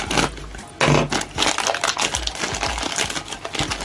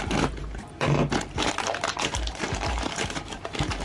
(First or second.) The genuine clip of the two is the first